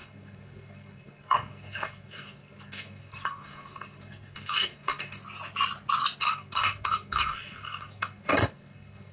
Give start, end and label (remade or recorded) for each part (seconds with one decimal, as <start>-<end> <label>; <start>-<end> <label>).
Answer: 0.0-5.2 remade; 5.2-6.2 recorded; 6.2-9.1 remade